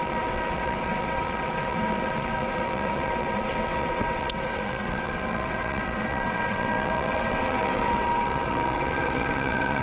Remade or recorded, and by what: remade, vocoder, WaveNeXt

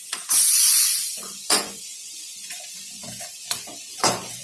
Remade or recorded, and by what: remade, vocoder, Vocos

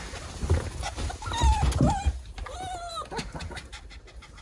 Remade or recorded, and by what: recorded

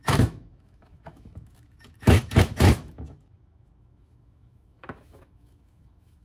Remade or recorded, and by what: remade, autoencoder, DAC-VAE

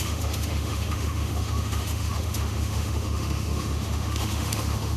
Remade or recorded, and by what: remade, autoencoder, DAC-VAE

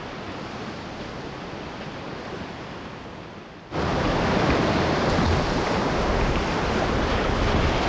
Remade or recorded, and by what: recorded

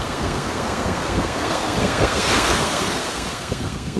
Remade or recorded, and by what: remade, codec, SNAC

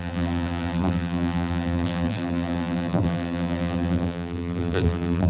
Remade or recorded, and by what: remade, vocoder, BigVGAN v2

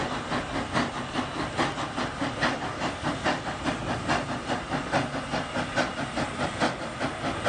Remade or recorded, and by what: recorded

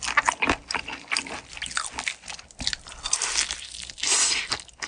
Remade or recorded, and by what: recorded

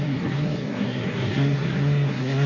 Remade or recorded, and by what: remade, codec, SNAC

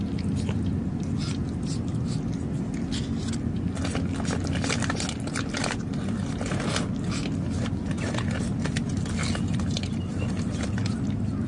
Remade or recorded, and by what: recorded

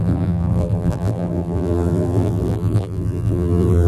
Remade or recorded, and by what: remade, vocoder, BigVGAN v2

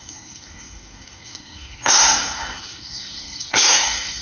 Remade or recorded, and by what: remade, codec, SNAC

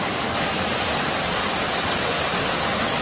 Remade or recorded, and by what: recorded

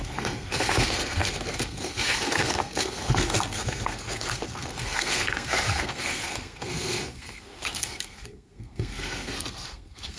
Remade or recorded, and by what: remade, codec, SNAC